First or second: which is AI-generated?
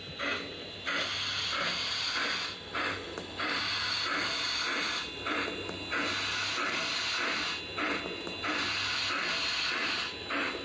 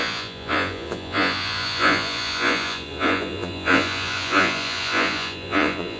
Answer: second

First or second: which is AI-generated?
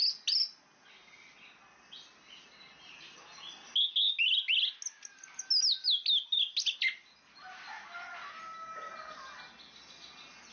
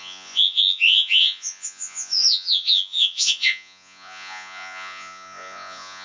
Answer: second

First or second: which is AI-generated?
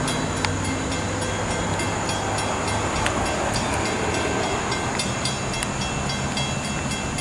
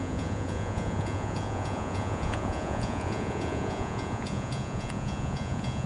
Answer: second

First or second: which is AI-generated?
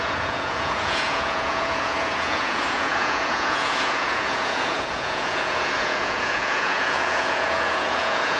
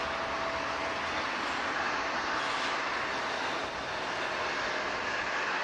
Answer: first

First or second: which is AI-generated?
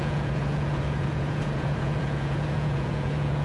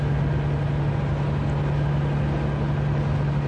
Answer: first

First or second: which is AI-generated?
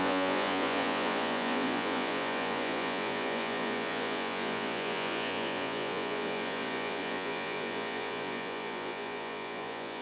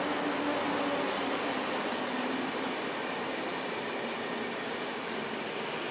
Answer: first